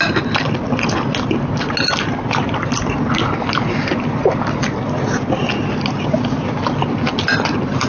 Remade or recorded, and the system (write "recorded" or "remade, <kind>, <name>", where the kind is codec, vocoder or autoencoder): recorded